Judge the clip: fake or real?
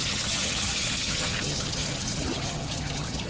fake